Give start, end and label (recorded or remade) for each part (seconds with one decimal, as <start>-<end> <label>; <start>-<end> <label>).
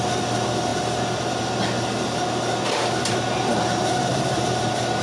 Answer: 0.0-4.1 recorded; 4.1-5.0 remade